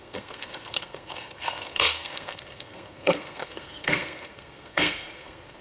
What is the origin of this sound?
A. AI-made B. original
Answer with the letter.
A